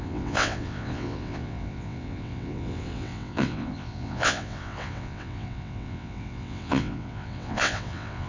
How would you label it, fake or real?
fake